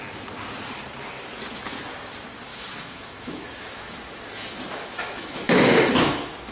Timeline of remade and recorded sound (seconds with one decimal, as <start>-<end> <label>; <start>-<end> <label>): 0.0-2.5 recorded; 2.5-6.5 remade